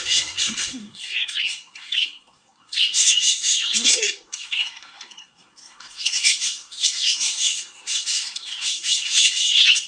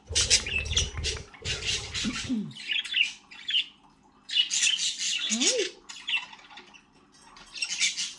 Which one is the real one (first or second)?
second